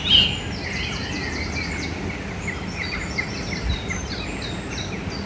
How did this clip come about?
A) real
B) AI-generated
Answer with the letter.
A